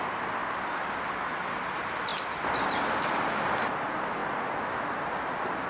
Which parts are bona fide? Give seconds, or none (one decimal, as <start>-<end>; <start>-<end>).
0.0-5.7